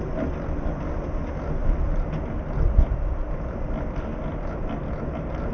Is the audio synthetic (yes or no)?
no